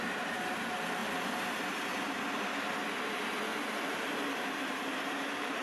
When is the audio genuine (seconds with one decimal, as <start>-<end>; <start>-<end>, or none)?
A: 0.0-3.5